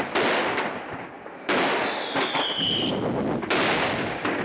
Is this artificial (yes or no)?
no